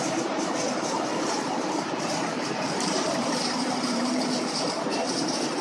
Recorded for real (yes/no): no